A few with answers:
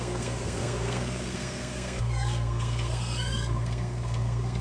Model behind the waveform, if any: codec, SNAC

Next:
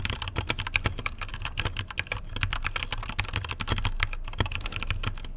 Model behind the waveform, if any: none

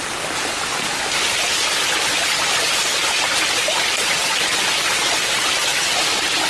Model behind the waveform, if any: none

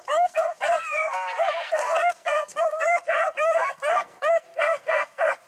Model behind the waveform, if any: codec, SNAC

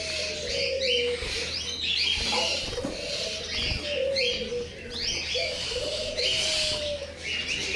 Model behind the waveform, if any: none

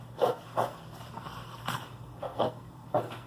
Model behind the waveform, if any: codec, SNAC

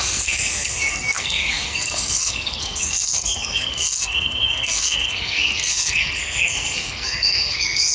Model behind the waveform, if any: codec, SNAC